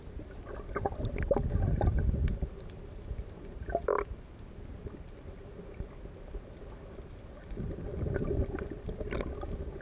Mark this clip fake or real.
real